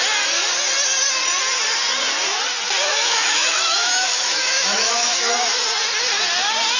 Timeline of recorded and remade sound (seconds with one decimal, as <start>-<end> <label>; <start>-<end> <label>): 0.0-2.9 recorded; 2.9-5.3 remade; 5.3-6.8 recorded